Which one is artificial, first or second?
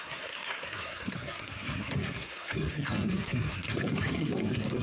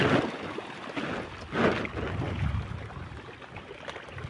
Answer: first